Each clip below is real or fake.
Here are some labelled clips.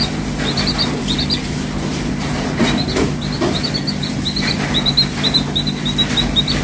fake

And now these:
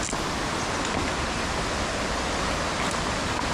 real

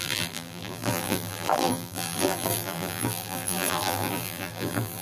fake